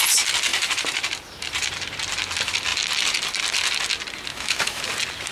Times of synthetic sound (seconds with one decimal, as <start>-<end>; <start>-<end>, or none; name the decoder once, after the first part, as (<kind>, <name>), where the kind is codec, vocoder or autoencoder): 4.3-4.8 (autoencoder, DAC-VAE)